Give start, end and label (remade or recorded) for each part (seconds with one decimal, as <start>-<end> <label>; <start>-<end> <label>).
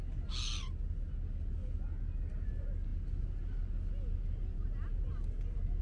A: 0.0-5.8 recorded